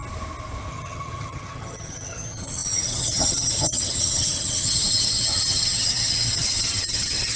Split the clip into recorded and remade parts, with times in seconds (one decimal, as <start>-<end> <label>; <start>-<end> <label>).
0.0-0.7 recorded; 0.7-7.4 remade